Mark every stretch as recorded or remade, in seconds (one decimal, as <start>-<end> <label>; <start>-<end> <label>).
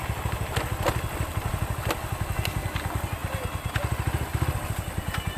0.0-5.4 recorded